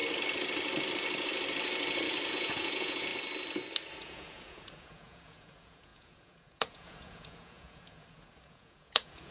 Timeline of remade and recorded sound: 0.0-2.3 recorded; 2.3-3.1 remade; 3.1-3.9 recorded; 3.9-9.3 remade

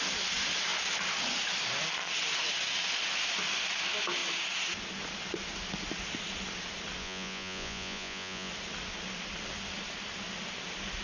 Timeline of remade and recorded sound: 0.0-7.0 recorded; 7.0-8.5 remade; 8.5-11.0 recorded

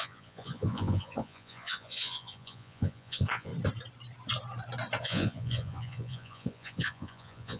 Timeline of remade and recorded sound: 0.0-3.5 remade; 3.5-5.0 recorded; 5.0-7.6 remade